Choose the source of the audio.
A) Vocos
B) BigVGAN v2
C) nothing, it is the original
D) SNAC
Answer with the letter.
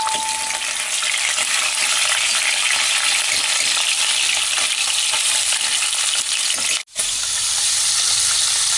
C